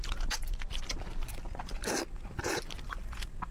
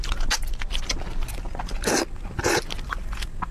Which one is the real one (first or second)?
second